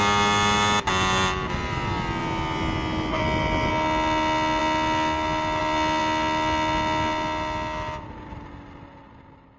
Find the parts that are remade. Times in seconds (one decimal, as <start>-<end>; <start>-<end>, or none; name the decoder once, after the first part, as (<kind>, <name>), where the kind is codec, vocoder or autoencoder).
none